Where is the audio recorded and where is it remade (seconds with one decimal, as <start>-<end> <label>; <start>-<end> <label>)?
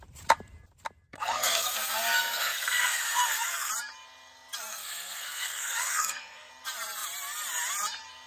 0.0-1.1 recorded; 1.1-3.7 remade; 3.7-4.7 recorded; 4.7-6.5 remade; 6.5-8.3 recorded